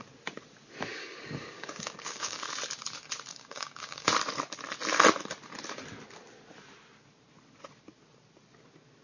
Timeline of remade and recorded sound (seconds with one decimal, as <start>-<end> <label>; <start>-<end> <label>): 0.0-0.9 recorded; 0.9-2.4 remade; 2.4-3.3 recorded; 3.3-4.1 remade; 4.1-9.0 recorded